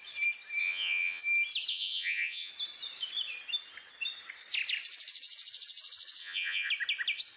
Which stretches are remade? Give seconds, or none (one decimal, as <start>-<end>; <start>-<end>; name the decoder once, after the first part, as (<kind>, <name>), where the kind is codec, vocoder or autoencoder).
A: 0.6-1.2 (vocoder, Vocos); 1.7-2.5; 6.2-6.7